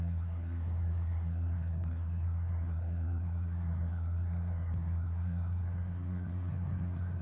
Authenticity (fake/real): fake